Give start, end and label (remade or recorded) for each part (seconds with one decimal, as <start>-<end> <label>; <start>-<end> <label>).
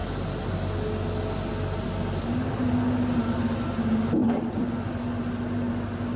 0.0-6.2 recorded